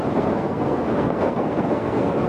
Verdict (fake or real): fake